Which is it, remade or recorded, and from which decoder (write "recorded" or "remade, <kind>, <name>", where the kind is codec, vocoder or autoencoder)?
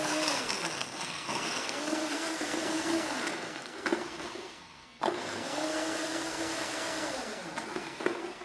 remade, codec, SNAC